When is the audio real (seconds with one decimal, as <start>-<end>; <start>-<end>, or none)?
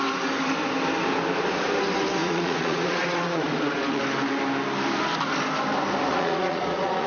0.0-2.2; 4.0-6.1